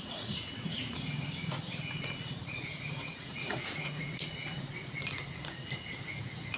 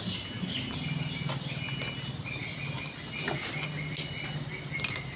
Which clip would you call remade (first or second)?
first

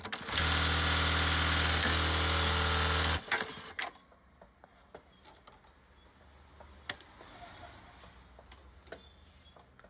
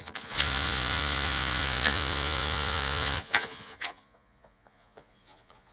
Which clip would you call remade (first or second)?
second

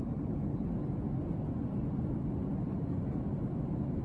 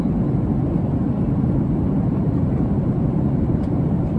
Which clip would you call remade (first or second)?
second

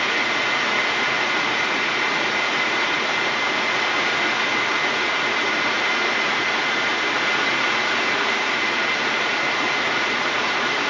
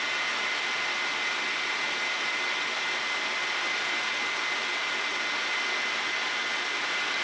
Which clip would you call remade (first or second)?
first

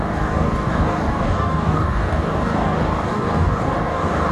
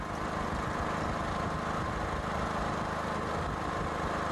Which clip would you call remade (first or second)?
first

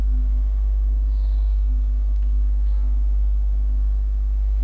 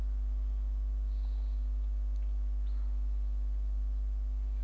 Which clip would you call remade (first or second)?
first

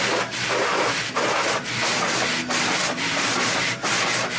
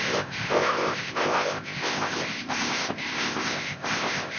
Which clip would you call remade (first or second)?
second